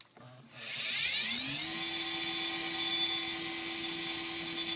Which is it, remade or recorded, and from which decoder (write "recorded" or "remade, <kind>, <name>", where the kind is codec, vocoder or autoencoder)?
recorded